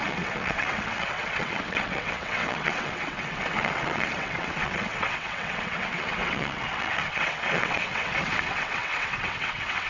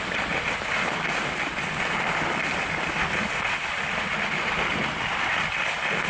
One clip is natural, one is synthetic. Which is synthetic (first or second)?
first